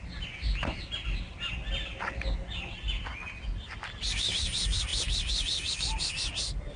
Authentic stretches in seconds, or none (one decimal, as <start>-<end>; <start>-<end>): 0.0-6.8